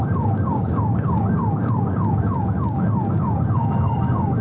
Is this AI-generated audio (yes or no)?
yes